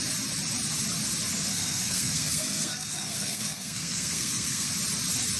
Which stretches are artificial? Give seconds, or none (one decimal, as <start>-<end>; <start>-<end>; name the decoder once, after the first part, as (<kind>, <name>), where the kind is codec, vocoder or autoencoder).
1.5-4.7 (codec, SNAC)